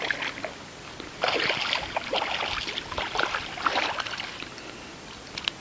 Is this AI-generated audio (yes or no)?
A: no